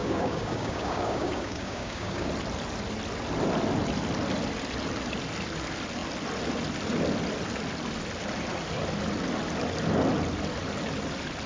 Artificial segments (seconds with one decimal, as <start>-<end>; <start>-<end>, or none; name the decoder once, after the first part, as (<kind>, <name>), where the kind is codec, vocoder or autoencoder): 0.0-2.3 (codec, DAC)